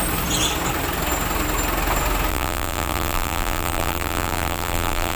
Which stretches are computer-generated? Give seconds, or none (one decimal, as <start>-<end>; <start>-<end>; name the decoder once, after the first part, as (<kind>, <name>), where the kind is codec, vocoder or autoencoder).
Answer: 2.3-5.2 (vocoder, BigVGAN v2)

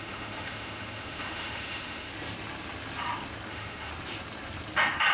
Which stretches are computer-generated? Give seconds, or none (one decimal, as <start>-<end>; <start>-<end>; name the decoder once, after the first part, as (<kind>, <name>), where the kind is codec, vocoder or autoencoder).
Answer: 0.0-2.1 (autoencoder, DAC-VAE); 3.5-3.9

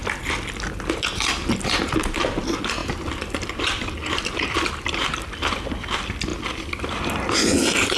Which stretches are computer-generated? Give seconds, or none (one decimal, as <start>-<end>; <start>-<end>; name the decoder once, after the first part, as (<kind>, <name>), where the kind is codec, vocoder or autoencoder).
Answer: none

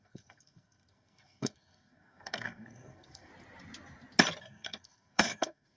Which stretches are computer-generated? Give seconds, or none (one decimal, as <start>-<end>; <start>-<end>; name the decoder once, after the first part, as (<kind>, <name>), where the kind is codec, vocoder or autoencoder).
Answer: 0.0-3.3 (codec, SNAC); 4.4-5.8

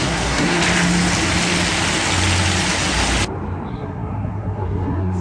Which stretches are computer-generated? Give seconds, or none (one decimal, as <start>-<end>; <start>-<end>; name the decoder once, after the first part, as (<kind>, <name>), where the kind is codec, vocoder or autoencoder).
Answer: 0.0-0.6 (codec, SNAC); 3.7-5.2